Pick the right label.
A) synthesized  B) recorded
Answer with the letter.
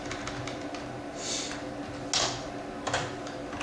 B